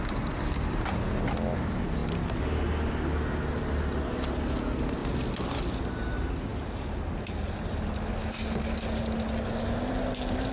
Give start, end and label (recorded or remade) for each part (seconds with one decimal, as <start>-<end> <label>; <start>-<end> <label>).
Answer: 0.0-5.0 recorded; 5.0-5.8 remade; 5.8-10.5 recorded